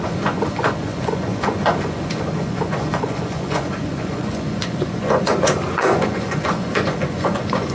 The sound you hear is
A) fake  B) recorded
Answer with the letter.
A